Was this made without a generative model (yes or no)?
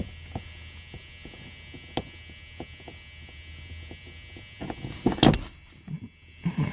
yes